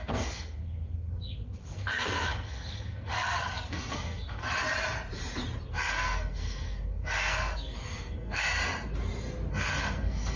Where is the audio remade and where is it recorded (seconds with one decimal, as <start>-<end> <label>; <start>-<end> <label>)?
0.0-4.4 remade; 4.4-5.7 recorded; 5.7-8.6 remade; 8.6-9.5 recorded; 9.5-10.4 remade